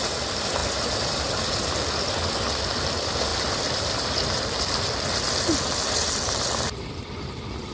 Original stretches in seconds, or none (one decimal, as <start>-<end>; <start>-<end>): 0.0-7.7